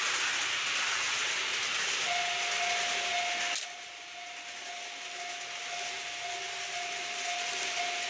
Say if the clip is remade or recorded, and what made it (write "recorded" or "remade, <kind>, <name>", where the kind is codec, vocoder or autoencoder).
recorded